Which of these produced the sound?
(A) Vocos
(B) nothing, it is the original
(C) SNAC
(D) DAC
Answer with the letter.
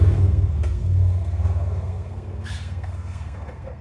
C